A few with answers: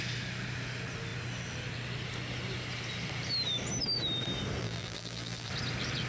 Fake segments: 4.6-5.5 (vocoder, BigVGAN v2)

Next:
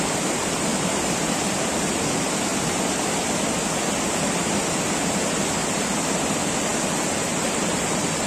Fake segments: 0.7-1.8 (vocoder, BigVGAN v2)

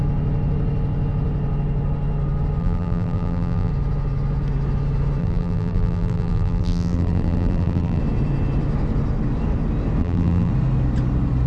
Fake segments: 2.6-3.7 (vocoder, BigVGAN v2); 5.2-8.0; 10.0-10.5